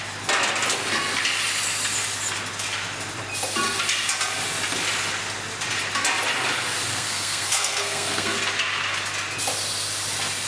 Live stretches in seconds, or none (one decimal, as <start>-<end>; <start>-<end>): 0.0-6.9; 8.4-10.5